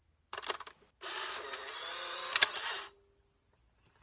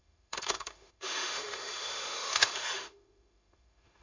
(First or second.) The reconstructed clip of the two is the second